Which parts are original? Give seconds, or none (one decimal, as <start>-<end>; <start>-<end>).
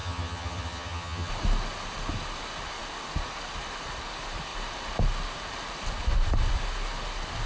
1.3-7.5